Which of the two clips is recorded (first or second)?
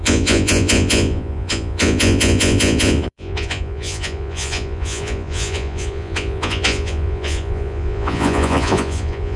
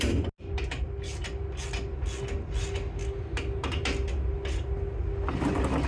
second